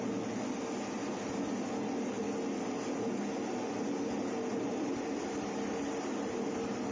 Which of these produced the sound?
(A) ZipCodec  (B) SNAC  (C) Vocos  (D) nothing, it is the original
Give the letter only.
D